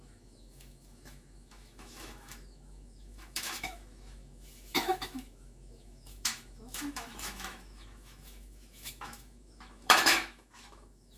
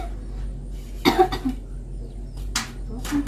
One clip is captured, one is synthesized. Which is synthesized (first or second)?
first